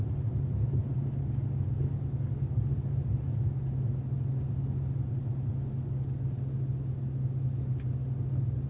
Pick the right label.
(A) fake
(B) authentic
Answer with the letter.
B